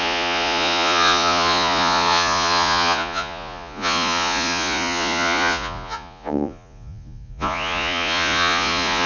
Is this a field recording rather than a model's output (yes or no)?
no